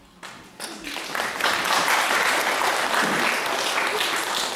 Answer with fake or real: real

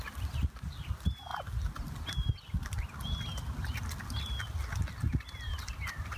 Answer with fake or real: real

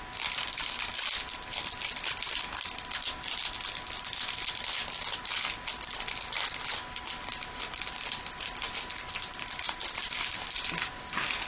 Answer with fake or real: real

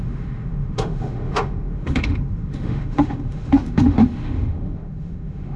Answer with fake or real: fake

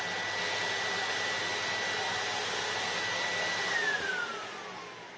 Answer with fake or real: real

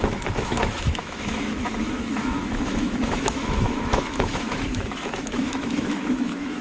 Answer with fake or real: fake